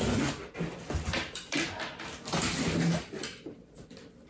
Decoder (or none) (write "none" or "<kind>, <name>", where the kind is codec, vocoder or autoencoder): none